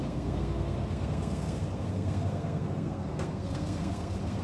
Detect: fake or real fake